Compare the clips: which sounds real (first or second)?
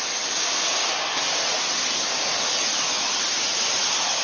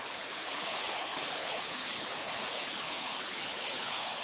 first